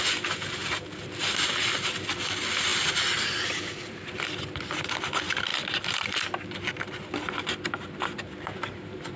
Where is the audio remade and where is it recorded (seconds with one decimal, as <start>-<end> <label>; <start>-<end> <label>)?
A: 0.0-0.6 recorded; 0.6-1.2 remade; 1.2-2.7 recorded; 2.7-4.9 remade; 4.9-5.5 recorded; 5.5-6.7 remade; 6.7-9.2 recorded